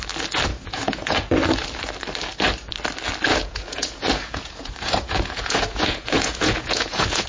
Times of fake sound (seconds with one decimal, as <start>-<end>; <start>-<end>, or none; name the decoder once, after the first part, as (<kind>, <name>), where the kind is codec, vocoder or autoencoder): 0.5-1.3 (vocoder, Vocos); 3.3-7.3